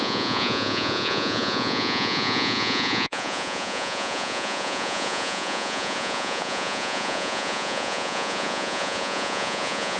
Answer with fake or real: fake